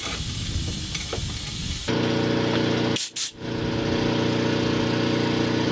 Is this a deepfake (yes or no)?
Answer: no